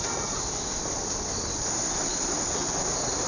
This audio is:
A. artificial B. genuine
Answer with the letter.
B